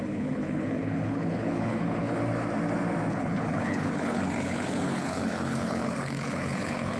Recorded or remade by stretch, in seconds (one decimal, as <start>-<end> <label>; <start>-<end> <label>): 0.0-2.2 remade; 2.2-3.1 recorded; 3.1-7.0 remade